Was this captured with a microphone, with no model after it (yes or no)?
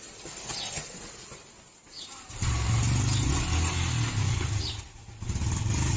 yes